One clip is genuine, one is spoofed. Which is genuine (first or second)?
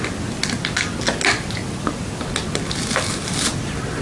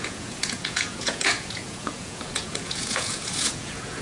first